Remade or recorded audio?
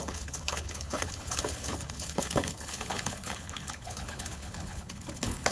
remade